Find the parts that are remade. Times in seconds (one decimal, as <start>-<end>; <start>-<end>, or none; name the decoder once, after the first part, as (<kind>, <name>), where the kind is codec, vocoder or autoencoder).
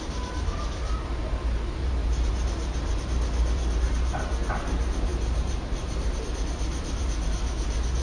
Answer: 0.0-8.0 (vocoder, BigVGAN v2)